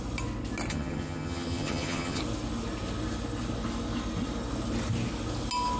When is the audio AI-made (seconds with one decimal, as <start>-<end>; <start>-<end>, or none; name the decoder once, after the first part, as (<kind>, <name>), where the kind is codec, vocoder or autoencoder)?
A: 0.7-2.2 (vocoder, HiFi-GAN)